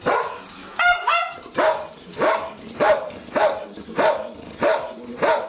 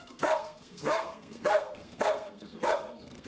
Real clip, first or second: first